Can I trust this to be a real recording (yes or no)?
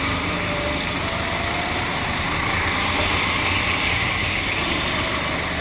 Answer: yes